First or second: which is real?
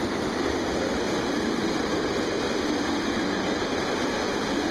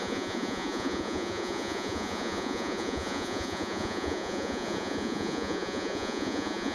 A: first